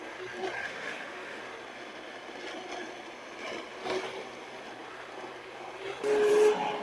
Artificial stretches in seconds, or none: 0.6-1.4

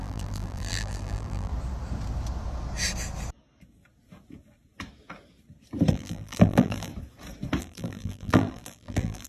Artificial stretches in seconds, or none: 0.0-1.5; 5.9-6.9; 7.6-9.3

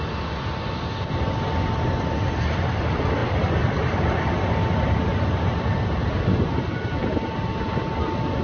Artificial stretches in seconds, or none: 3.2-4.3

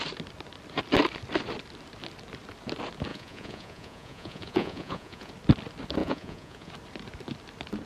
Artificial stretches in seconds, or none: 3.1-5.3; 6.0-6.7